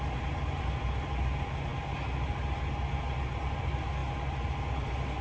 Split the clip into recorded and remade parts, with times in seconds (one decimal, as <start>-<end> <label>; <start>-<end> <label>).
0.0-5.2 recorded